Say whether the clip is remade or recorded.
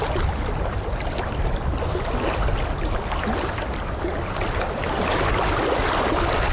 recorded